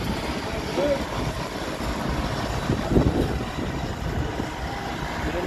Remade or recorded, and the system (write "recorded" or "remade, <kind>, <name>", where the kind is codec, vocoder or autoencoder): recorded